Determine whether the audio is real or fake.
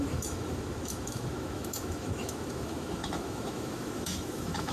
fake